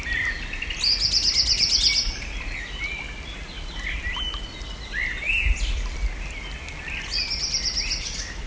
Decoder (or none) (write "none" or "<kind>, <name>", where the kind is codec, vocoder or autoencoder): none